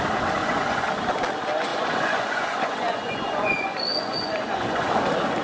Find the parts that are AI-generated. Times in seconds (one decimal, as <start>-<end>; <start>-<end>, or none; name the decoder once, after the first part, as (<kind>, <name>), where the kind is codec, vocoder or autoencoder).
0.4-0.9 (vocoder, Vocos); 1.7-4.9